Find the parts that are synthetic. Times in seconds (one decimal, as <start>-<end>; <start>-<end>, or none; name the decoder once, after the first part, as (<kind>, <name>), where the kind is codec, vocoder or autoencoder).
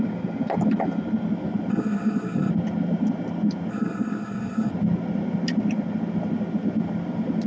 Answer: 1.7-2.5 (codec, SNAC); 3.7-4.7